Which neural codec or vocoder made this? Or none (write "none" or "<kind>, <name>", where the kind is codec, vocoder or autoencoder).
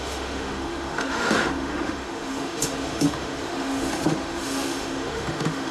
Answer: autoencoder, DAC-VAE